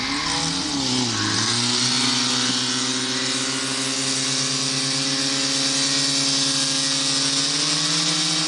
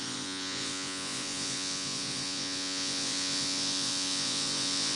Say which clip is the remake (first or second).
second